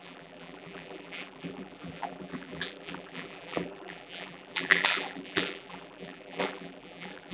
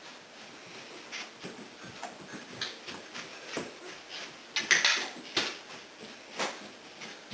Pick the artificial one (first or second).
first